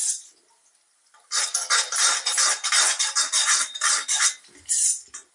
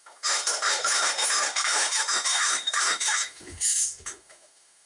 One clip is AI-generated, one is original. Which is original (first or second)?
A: first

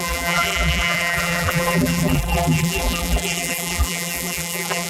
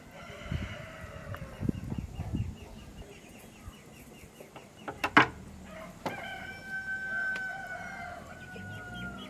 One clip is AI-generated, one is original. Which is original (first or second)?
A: second